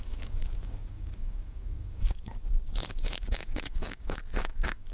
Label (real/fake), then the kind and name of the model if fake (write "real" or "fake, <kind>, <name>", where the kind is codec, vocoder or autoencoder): fake, codec, DAC